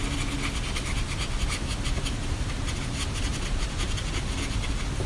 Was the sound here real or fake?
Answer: real